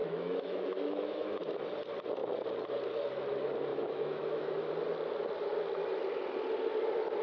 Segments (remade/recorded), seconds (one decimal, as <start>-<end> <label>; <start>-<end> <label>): 0.0-1.4 remade; 1.4-3.7 recorded; 3.7-4.7 remade; 4.7-7.2 recorded